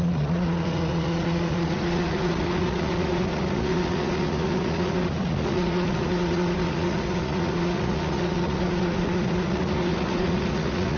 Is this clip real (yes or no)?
no